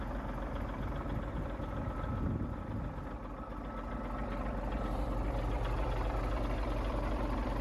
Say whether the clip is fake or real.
real